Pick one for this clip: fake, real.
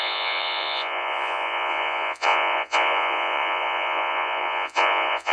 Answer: fake